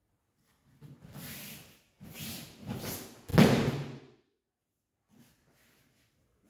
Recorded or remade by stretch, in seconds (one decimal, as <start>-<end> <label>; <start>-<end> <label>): 0.0-6.5 recorded